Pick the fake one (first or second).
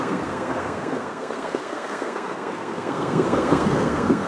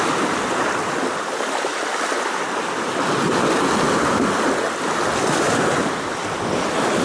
first